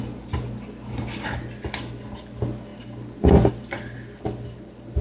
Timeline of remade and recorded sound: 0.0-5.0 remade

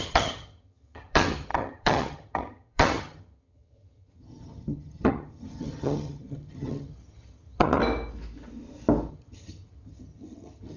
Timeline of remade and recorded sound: 0.0-7.8 remade; 7.8-9.1 recorded; 9.1-10.8 remade

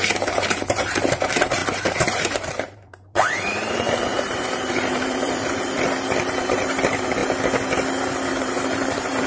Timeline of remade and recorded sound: 0.0-7.2 remade; 7.2-8.4 recorded; 8.4-9.3 remade

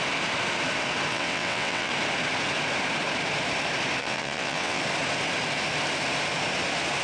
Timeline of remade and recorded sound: 0.0-1.1 recorded; 1.1-1.9 remade; 1.9-4.0 recorded; 4.0-4.8 remade; 4.8-7.0 recorded

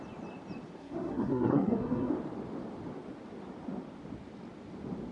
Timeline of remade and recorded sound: 0.0-0.8 recorded; 0.8-2.1 remade; 2.1-5.1 recorded